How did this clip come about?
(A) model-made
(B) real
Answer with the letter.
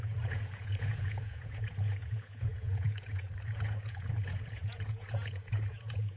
A